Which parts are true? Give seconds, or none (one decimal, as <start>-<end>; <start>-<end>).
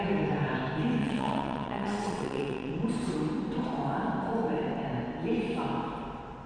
0.0-1.0; 2.7-6.5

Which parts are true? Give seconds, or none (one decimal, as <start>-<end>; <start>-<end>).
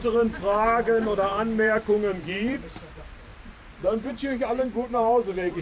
none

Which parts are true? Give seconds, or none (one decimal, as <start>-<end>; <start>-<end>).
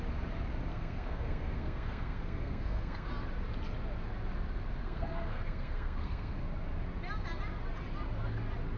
0.0-0.7; 3.1-4.8; 6.4-8.8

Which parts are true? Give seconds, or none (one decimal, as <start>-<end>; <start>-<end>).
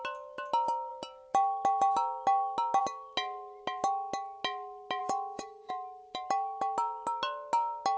0.0-5.0; 5.7-8.0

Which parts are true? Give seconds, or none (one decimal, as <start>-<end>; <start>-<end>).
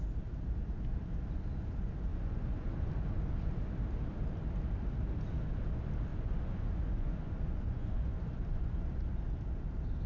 0.0-2.1; 2.9-6.1; 8.8-10.1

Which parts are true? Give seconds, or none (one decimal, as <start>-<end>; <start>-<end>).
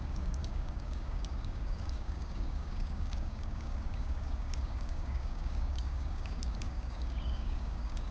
none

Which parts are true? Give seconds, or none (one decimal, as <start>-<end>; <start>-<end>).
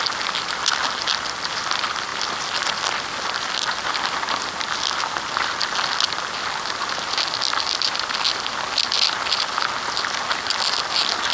0.0-11.3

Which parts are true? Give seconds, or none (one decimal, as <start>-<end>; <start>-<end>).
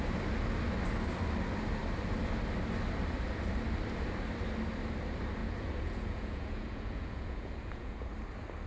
0.0-5.4; 8.1-8.7